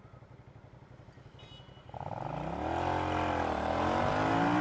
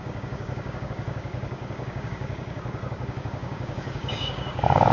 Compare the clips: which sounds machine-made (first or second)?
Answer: second